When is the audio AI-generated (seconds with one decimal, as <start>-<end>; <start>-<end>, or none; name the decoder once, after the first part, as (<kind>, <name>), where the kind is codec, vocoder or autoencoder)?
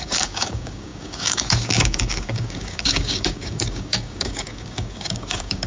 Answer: 0.0-5.7 (codec, DAC)